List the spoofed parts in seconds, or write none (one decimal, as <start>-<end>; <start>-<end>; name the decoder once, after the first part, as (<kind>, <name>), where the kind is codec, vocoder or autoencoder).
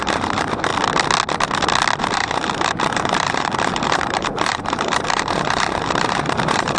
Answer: 0.0-0.7 (vocoder, BigVGAN v2); 2.0-6.8